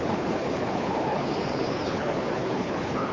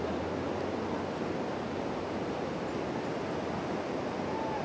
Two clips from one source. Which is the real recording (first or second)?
second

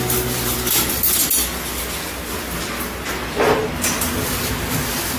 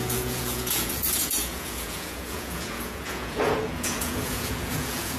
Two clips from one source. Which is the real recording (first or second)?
first